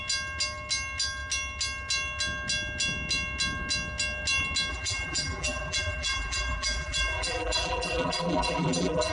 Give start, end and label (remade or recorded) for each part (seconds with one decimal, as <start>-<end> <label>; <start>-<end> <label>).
0.0-4.7 recorded; 4.7-9.1 remade